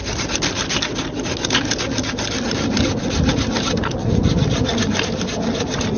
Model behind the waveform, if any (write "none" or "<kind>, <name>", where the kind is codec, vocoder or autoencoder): none